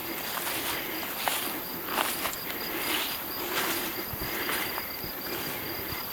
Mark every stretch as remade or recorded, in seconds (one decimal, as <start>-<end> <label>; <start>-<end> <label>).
0.0-6.1 recorded